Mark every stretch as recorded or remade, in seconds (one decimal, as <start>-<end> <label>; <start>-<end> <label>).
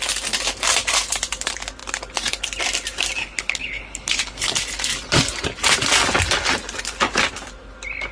0.0-3.2 recorded; 3.2-4.5 remade; 4.5-8.1 recorded